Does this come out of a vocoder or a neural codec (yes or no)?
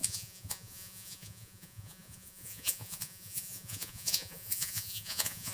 yes